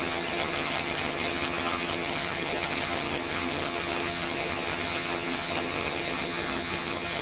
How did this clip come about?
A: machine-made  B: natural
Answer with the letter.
A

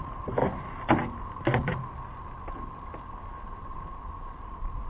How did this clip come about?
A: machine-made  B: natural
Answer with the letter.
B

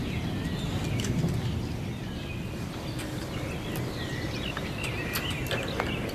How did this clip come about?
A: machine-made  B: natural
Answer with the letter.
B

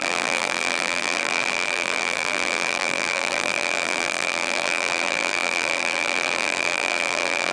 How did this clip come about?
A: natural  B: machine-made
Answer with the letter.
B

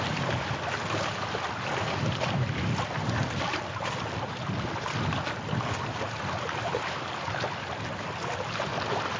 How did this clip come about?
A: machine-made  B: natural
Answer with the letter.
B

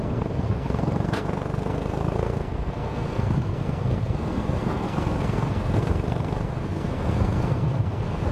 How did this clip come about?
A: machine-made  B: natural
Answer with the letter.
A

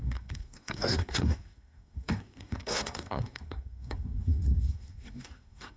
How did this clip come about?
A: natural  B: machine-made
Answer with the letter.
B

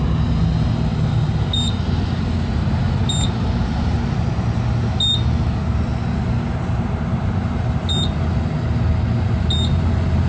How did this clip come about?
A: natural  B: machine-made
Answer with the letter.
A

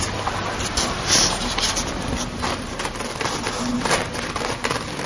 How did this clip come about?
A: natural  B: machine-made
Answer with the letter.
A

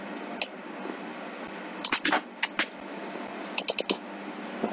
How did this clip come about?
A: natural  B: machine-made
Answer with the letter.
A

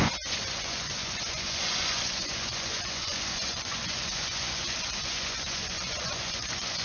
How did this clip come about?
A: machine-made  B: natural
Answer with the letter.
A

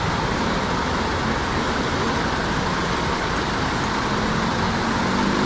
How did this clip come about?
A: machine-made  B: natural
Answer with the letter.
B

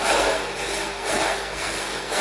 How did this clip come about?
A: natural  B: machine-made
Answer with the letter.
B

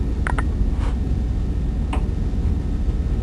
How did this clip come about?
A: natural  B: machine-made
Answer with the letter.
A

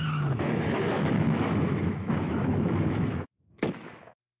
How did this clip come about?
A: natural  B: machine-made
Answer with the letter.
B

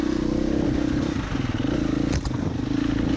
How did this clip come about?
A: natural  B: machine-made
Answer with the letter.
A